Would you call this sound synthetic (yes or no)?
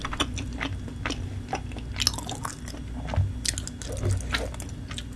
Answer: no